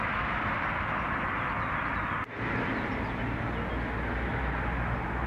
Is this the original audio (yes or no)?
yes